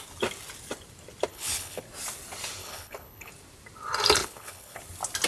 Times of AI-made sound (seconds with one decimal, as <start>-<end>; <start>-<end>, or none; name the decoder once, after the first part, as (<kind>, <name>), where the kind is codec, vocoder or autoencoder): 1.3-1.8 (codec, HILCodec); 2.6-3.3; 4.2-4.8